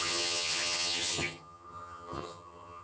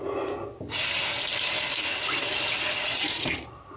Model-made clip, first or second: first